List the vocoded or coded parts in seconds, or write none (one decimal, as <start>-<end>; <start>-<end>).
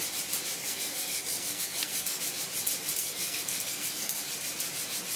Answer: 0.6-2.2; 3.0-4.2